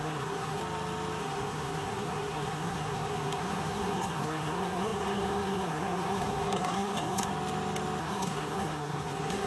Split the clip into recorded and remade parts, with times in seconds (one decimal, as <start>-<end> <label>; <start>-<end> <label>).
0.0-0.6 remade; 0.6-1.2 recorded; 1.2-7.3 remade; 7.3-8.0 recorded; 8.0-9.5 remade